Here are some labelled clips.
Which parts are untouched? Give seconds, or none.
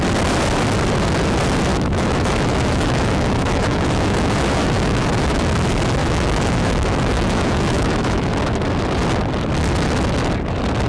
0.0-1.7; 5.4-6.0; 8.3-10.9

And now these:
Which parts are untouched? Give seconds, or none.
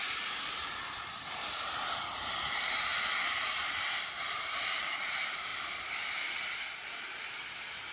none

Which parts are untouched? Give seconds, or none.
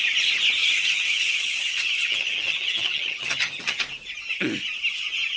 0.0-0.6; 3.8-5.4